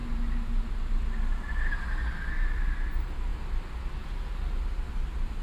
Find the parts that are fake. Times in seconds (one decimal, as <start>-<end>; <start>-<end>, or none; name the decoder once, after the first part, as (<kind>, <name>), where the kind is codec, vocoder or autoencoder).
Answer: none